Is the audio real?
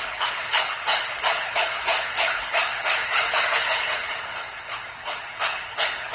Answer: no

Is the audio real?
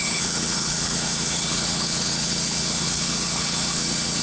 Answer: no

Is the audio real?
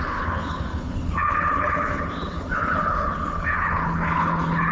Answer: no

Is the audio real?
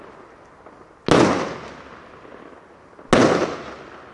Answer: yes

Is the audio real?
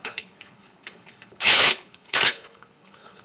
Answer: no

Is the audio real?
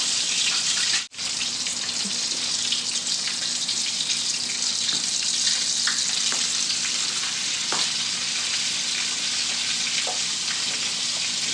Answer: yes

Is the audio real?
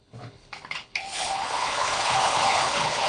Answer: no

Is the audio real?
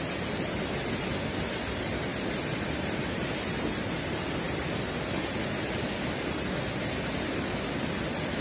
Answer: yes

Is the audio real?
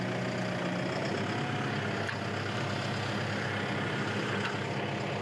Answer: yes